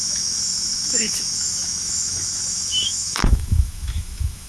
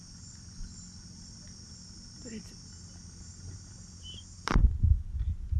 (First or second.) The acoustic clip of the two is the second